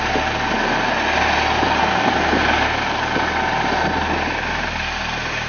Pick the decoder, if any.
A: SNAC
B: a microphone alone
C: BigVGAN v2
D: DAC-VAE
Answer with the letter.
B